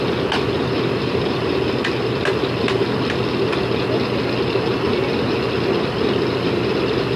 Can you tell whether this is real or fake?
real